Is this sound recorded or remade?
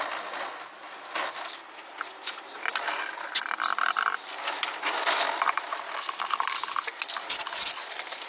recorded